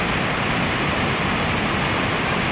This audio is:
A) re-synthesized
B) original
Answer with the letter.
B